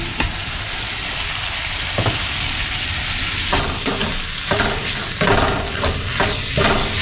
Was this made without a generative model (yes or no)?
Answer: yes